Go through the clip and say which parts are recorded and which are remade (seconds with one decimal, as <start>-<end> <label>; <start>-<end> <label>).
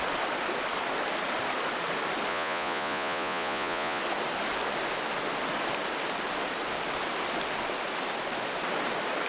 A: 0.0-2.3 recorded; 2.3-4.0 remade; 4.0-9.3 recorded